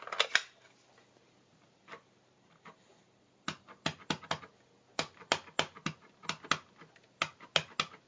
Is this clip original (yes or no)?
yes